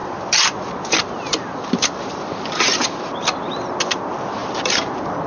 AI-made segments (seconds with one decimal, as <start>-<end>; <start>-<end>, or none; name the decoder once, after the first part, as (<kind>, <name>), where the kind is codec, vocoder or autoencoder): none